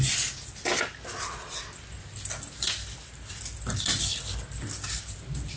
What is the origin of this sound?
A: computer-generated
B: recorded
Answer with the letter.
B